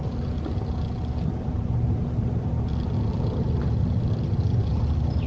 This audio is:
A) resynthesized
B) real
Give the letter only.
B